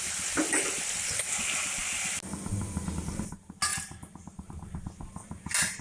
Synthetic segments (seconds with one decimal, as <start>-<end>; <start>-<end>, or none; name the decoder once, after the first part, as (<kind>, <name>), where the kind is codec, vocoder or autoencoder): none